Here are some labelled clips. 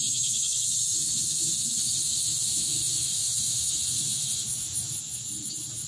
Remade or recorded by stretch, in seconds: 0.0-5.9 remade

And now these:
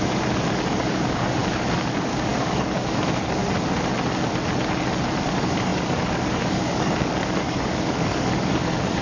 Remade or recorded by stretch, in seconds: 0.0-3.4 remade; 3.4-5.2 recorded; 5.2-9.0 remade

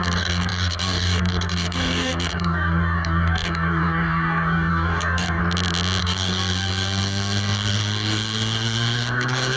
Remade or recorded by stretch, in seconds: 0.0-5.4 remade; 5.4-6.0 recorded; 6.0-9.6 remade

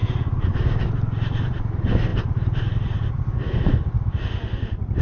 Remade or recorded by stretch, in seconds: 0.0-5.0 recorded

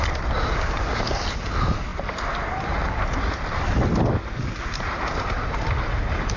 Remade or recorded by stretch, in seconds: 0.0-6.4 recorded

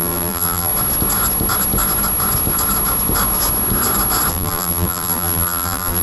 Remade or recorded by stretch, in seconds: 0.0-0.7 remade; 0.7-4.3 recorded; 4.3-6.0 remade

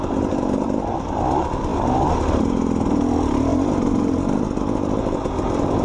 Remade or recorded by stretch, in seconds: 0.0-5.8 recorded